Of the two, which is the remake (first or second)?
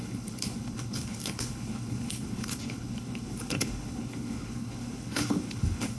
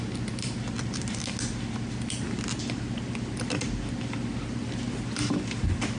first